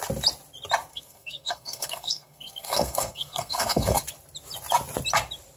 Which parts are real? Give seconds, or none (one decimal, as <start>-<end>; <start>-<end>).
0.0-0.9; 4.0-5.6